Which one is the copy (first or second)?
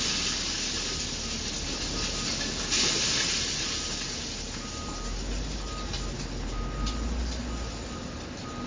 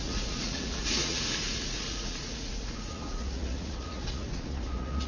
second